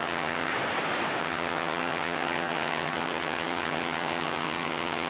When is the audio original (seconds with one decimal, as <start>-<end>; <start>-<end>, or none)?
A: 0.5-1.2